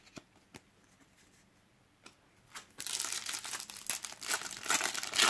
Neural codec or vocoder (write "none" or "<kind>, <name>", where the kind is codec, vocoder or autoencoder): none